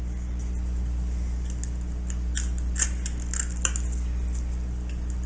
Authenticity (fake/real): real